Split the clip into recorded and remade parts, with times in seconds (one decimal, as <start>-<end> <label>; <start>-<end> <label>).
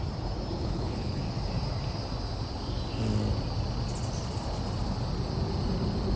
0.0-0.6 recorded; 0.6-1.2 remade; 1.2-6.2 recorded